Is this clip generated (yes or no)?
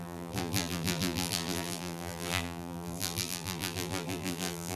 yes